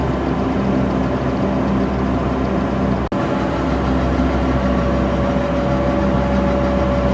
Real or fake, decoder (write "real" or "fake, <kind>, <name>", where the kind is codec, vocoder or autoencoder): real